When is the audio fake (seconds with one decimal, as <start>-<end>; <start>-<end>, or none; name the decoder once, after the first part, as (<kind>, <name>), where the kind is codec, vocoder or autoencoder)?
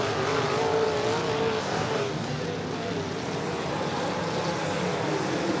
1.6-2.4 (codec, DAC)